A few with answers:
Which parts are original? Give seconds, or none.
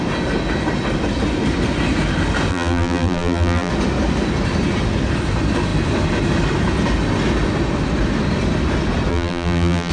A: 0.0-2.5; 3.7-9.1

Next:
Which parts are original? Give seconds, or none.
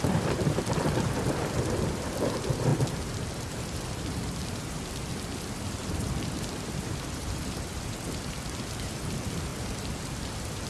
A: 4.4-5.1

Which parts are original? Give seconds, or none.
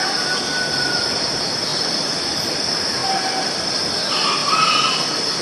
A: 0.0-1.7; 2.4-3.0; 3.8-4.4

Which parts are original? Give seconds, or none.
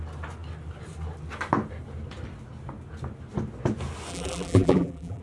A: 0.0-4.1